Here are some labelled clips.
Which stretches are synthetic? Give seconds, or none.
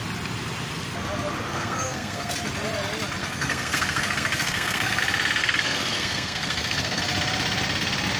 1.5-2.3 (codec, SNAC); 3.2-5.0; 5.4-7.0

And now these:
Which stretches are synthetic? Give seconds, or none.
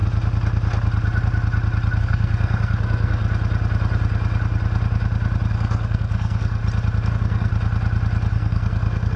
2.0-3.2 (codec, SNAC); 5.5-6.6; 7.1-7.5; 8.3-9.2